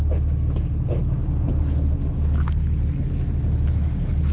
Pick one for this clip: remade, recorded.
recorded